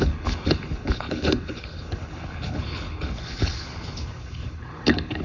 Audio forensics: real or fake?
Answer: fake